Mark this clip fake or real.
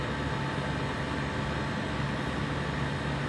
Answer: real